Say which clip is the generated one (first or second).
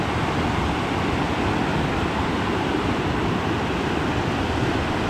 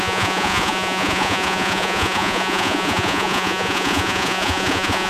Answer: second